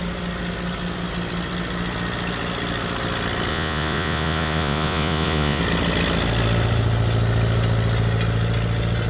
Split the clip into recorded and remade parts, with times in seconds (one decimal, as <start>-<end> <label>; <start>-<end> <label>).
0.0-3.5 recorded; 3.5-5.6 remade; 5.6-9.1 recorded